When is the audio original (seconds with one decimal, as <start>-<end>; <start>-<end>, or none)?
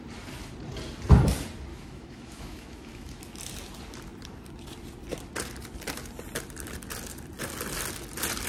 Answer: 0.0-1.7; 3.2-8.5